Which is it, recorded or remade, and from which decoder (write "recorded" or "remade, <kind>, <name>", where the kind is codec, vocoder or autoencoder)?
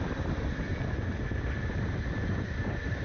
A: recorded